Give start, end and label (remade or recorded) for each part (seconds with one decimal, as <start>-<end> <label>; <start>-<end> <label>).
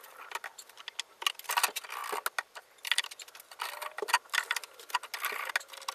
0.0-5.9 recorded